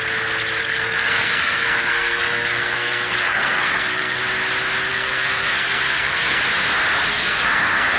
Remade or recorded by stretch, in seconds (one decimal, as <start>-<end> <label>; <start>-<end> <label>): 0.0-0.6 recorded; 0.6-4.2 remade; 4.2-4.9 recorded; 4.9-6.4 remade; 6.4-7.1 recorded; 7.1-8.0 remade